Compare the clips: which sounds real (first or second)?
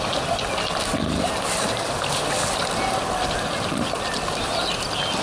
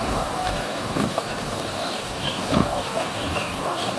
first